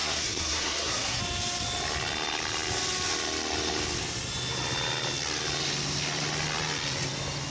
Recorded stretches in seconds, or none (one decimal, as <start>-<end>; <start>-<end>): 1.2-7.5